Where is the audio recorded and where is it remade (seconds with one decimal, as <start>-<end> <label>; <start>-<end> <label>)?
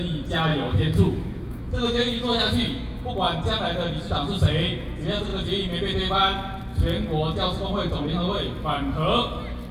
0.0-0.5 recorded; 0.5-3.1 remade; 3.1-9.7 recorded